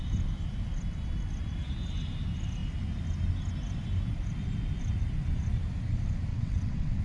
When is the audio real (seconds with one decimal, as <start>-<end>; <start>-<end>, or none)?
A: 0.0-6.3